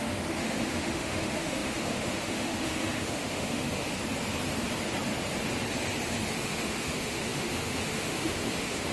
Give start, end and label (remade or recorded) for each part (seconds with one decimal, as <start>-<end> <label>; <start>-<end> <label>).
0.0-3.9 remade; 3.9-6.3 recorded; 6.3-8.9 remade